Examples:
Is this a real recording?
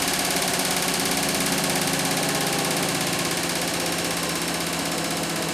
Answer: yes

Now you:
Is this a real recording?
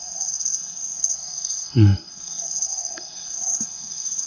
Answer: no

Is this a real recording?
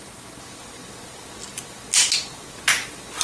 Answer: yes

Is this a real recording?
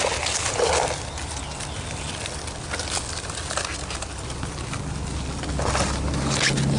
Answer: yes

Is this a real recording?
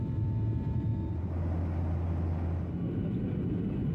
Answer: yes